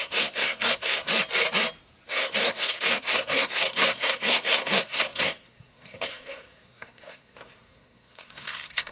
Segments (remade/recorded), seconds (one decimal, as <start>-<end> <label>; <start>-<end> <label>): 0.0-1.1 remade; 1.1-2.1 recorded; 2.1-8.9 remade